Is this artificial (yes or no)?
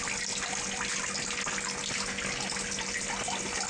no